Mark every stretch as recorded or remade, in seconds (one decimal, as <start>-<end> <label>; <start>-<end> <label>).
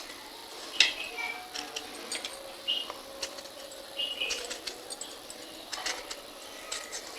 0.0-2.3 recorded; 2.3-6.6 remade; 6.6-7.2 recorded